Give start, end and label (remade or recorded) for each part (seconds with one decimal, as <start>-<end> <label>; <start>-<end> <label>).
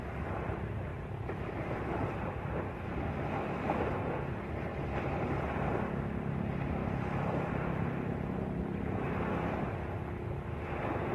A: 0.0-4.7 recorded; 4.7-5.4 remade; 5.4-6.8 recorded; 6.8-9.6 remade; 9.6-11.1 recorded